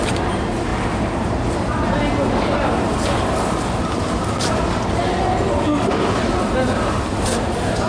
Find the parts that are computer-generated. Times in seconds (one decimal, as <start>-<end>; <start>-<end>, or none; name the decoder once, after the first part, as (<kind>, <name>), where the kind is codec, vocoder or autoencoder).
none